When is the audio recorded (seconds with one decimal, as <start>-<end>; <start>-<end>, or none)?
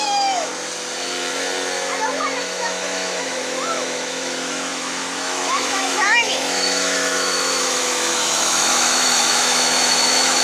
0.5-2.4